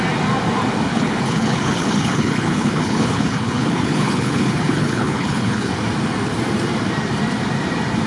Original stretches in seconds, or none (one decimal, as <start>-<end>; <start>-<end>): 0.0-0.9; 5.7-8.1